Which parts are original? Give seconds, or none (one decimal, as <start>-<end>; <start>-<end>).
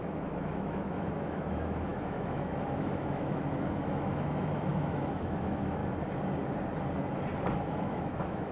5.8-7.7